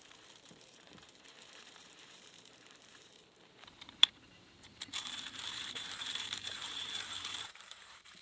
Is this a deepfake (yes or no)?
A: yes